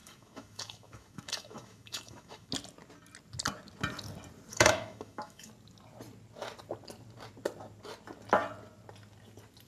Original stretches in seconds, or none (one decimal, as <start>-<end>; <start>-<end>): 2.5-4.5; 5.5-9.7